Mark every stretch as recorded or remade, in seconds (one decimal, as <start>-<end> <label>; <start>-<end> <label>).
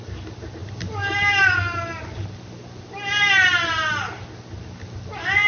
0.0-5.5 recorded